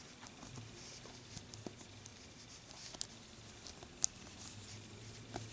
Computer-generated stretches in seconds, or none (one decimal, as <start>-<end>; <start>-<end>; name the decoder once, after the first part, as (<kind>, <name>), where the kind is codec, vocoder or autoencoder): none